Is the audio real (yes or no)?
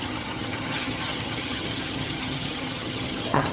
no